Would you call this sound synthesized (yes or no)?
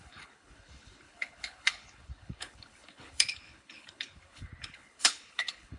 yes